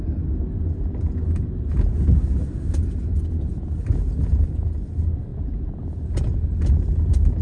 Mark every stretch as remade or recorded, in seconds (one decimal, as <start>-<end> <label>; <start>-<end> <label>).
0.0-7.4 recorded